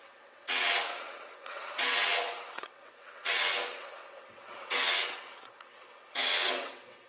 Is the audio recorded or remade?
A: remade